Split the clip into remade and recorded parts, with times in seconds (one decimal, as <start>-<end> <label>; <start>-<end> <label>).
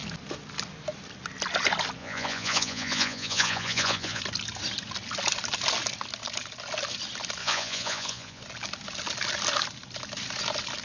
0.0-2.0 recorded; 2.0-4.2 remade; 4.2-7.4 recorded; 7.4-8.4 remade; 8.4-10.8 recorded